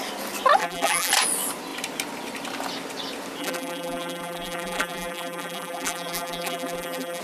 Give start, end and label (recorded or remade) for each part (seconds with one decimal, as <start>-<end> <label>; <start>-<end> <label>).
0.0-0.6 recorded; 0.6-1.1 remade; 1.1-3.4 recorded; 3.4-7.2 remade